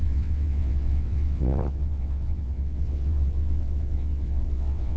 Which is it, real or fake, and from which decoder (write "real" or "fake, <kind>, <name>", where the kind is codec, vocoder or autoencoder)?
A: fake, vocoder, WaveNeXt